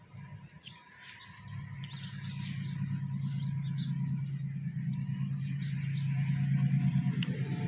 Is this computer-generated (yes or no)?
no